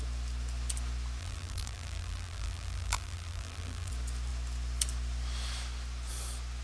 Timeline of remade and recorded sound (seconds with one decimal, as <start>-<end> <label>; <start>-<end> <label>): 0.0-1.2 recorded; 1.2-3.9 remade; 3.9-6.6 recorded